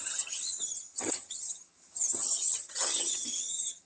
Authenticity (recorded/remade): remade